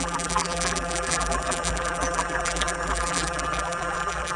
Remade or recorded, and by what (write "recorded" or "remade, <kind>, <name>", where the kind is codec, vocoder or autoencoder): remade, vocoder, BigVGAN v2